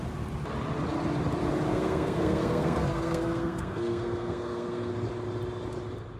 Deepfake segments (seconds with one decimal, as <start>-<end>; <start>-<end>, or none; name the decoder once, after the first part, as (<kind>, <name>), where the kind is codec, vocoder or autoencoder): 1.7-4.9 (codec, SNAC)